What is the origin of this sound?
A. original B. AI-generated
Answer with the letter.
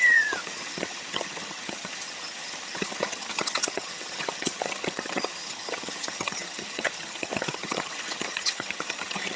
B